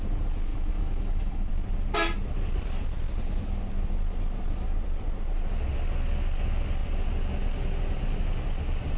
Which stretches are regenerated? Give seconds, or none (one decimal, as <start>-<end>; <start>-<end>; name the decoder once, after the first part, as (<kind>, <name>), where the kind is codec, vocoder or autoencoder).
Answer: 0.5-1.5 (autoencoder, DAC-VAE)